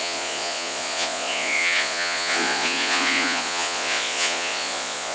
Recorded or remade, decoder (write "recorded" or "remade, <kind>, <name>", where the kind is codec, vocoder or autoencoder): remade, vocoder, Vocos